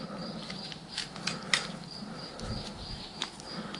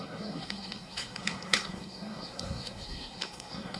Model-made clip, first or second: second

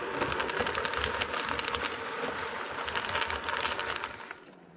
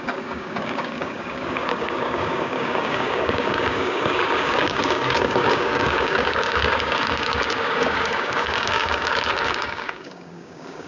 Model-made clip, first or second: second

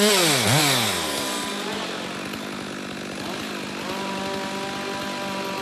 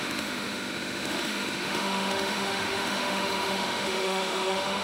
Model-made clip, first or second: second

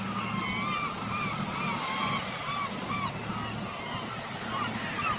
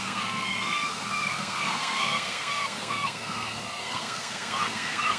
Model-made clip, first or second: second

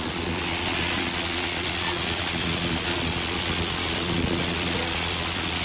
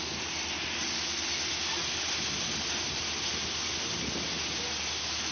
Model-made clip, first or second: first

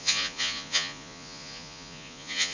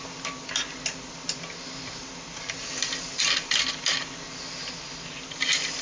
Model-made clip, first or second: first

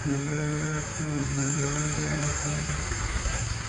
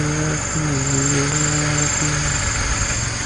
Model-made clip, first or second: first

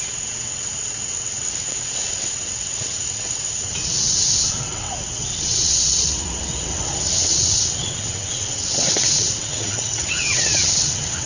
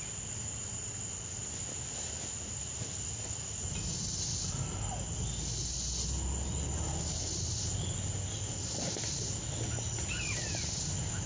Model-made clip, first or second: first